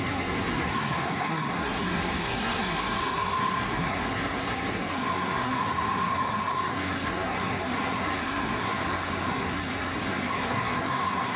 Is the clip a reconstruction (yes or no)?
yes